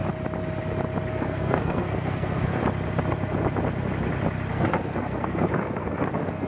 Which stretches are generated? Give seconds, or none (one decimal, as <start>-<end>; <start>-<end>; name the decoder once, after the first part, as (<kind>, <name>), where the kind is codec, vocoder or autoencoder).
1.1-2.6 (codec, SNAC); 4.5-6.5